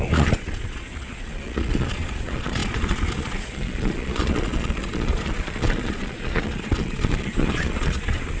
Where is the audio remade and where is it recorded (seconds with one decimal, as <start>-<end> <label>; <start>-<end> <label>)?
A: 0.0-8.4 remade